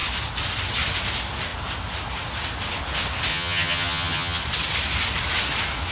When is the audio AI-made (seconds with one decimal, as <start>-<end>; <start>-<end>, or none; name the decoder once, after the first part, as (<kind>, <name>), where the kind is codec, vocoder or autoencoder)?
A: 3.3-4.4 (vocoder, HiFi-GAN)